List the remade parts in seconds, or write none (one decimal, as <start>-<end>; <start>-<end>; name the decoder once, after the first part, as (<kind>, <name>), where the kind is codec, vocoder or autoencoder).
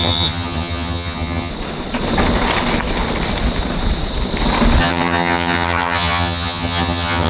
0.0-1.5 (vocoder, HiFi-GAN); 4.8-7.3